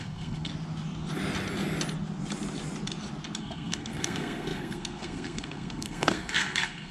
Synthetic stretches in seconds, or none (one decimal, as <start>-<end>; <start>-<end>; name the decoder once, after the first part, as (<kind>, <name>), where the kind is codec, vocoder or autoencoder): 0.0-0.5 (codec, SNAC); 3.4-6.9